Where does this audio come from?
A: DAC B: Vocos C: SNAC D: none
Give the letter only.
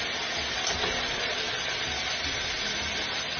D